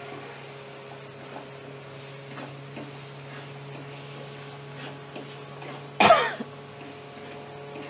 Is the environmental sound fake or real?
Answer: real